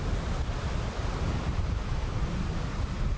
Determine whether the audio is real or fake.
real